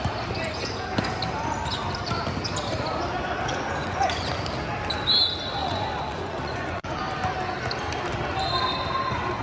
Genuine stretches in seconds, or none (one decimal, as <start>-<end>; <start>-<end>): 0.0-3.5; 4.3-5.6; 7.0-9.4